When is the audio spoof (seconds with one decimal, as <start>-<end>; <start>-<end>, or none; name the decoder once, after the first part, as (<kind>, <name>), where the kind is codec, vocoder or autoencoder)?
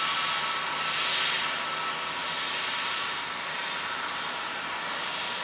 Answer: none